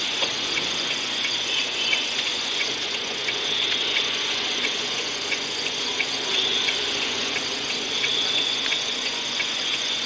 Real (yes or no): no